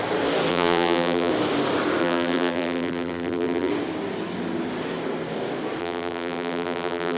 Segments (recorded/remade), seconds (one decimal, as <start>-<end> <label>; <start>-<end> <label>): 0.0-0.5 recorded; 0.5-1.3 remade; 1.3-2.0 recorded; 2.0-3.7 remade; 3.7-5.8 recorded; 5.8-7.2 remade